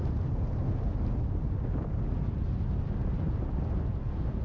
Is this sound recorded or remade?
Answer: recorded